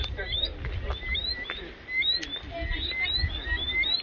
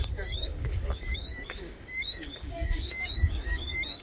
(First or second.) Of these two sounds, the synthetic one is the second